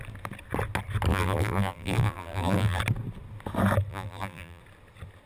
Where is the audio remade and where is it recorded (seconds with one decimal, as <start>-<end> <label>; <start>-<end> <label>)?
0.0-1.1 recorded; 1.1-2.8 remade; 2.8-3.9 recorded; 3.9-4.6 remade; 4.6-5.3 recorded